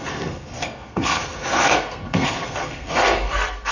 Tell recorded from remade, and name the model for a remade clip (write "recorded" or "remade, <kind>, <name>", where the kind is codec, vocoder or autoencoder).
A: remade, codec, SNAC